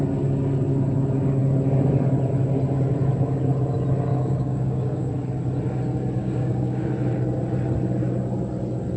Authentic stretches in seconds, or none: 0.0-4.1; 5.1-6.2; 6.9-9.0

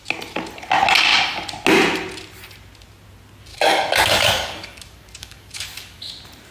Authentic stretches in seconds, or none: 0.0-3.5; 6.1-6.5

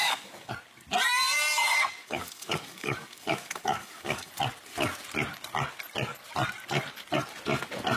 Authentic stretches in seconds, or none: 0.5-2.0; 4.3-8.0